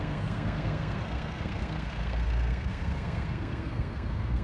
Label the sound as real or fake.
fake